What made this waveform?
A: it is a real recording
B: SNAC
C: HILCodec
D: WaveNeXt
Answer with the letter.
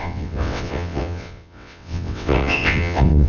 D